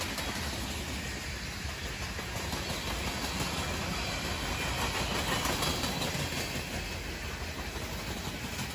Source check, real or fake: real